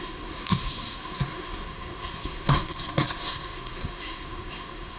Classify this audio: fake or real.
fake